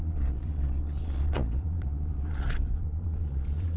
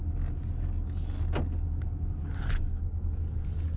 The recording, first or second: second